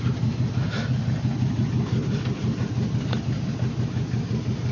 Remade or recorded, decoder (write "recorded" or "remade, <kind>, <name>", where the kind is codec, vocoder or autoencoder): recorded